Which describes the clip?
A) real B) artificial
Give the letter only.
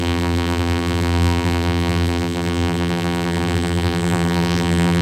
B